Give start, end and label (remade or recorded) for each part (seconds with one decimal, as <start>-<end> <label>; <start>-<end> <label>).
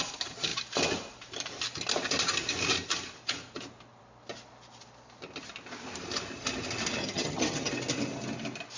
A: 0.0-7.0 recorded; 7.0-7.7 remade; 7.7-8.8 recorded